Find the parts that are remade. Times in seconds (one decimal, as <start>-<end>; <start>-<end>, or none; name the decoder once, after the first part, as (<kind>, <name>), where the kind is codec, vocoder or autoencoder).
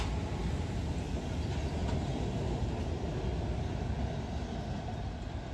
none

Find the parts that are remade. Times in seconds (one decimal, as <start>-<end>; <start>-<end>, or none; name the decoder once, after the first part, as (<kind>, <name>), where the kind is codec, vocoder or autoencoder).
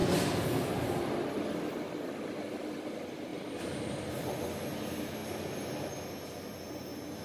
0.0-1.4 (vocoder, BigVGAN v2); 3.3-4.0; 5.2-5.9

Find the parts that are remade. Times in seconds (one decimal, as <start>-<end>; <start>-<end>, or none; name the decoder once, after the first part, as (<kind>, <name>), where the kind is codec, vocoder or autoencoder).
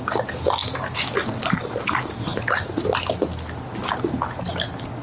none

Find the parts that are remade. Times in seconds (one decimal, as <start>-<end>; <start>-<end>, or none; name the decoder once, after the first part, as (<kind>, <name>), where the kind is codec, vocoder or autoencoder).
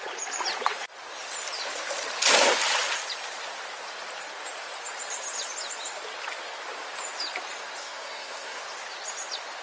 7.8-8.6 (codec, SNAC)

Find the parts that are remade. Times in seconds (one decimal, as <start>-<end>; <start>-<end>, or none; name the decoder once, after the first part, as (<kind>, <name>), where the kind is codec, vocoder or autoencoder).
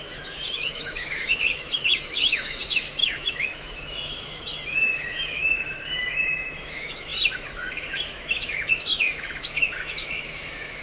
0.0-10.8 (autoencoder, DAC-VAE)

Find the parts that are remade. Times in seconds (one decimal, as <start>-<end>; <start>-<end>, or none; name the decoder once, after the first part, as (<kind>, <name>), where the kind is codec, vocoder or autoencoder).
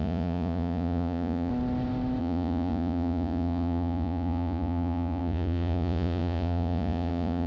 0.0-1.5 (vocoder, Vocos); 2.2-7.5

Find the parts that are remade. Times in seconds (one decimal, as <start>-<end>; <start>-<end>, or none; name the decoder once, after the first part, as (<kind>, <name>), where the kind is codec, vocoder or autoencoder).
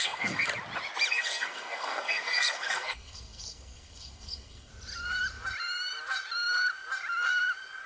0.0-0.5 (codec, SNAC); 1.1-4.7